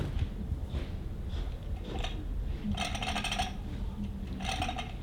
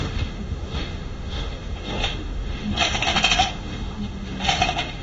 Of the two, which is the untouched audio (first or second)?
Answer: first